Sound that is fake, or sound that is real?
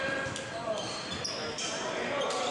real